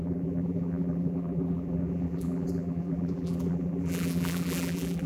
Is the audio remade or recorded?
remade